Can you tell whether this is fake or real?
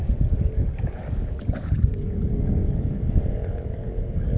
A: fake